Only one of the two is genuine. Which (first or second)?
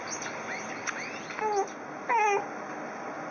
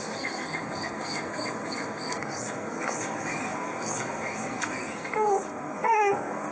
first